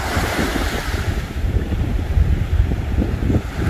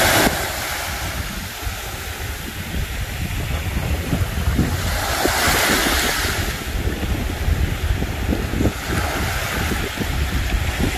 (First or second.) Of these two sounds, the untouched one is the second